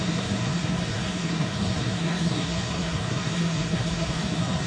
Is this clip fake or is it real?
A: fake